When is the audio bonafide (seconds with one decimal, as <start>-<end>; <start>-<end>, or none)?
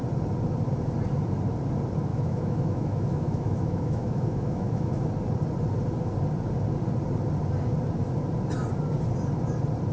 0.0-2.1; 4.9-9.9